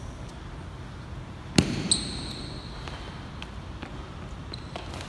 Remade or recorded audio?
recorded